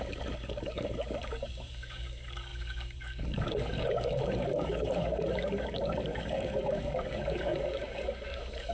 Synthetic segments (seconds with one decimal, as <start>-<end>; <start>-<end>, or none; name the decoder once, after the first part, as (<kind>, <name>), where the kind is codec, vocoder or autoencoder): 0.0-8.7 (codec, DAC)